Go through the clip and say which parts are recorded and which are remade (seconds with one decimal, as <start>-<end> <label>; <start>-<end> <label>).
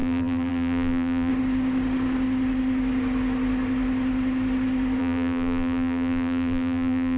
0.0-1.3 remade; 1.3-5.0 recorded; 5.0-7.2 remade